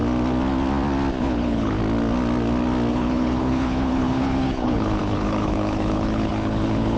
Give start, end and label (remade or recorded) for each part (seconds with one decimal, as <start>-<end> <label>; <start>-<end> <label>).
0.0-1.2 recorded; 1.2-1.8 remade; 1.8-2.9 recorded; 2.9-7.0 remade